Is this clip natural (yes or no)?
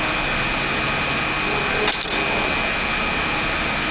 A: yes